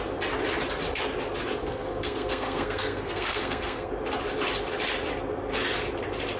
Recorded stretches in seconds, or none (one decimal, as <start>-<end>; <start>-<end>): 0.0-1.6; 3.9-6.4